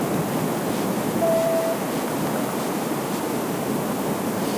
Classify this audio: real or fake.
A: real